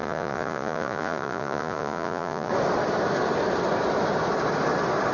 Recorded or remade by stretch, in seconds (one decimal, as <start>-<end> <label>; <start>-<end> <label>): 0.0-2.5 remade; 2.5-5.1 recorded